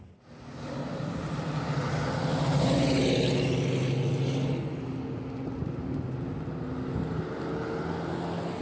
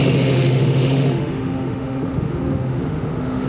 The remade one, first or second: second